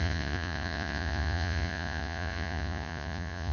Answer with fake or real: fake